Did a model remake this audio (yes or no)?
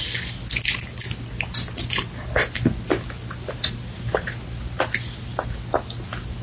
no